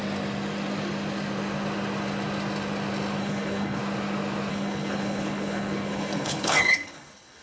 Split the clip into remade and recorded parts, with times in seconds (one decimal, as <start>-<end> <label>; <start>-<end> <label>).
0.0-3.2 recorded; 3.2-3.8 remade; 3.8-4.5 recorded; 4.5-7.4 remade